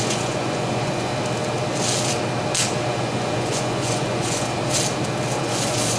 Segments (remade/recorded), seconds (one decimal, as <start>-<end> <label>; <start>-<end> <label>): 0.0-1.1 remade; 1.1-2.9 recorded; 2.9-4.6 remade; 4.6-5.4 recorded; 5.4-6.0 remade